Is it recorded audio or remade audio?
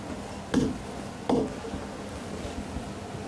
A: recorded